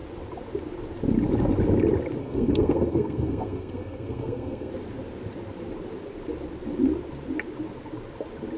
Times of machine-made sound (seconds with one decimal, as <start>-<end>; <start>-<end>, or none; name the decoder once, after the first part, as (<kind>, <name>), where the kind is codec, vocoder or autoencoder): 2.2-4.7 (codec, SNAC)